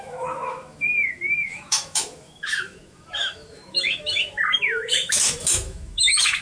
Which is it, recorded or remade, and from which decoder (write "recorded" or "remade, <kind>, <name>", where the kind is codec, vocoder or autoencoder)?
remade, autoencoder, DAC-VAE